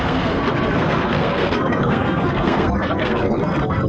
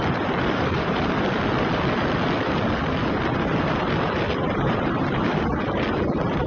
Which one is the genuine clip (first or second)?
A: second